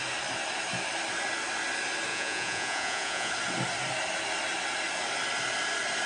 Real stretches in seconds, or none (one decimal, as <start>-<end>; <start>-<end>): 0.0-2.1; 3.3-6.1

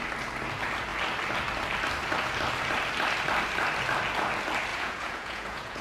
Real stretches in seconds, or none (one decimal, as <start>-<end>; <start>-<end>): 0.0-4.7

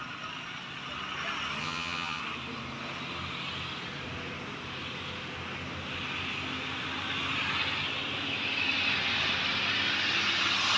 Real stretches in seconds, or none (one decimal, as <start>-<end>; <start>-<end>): 0.0-1.6; 2.2-10.8

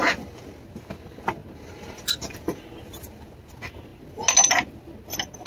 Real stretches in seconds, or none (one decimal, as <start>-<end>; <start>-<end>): 0.0-5.5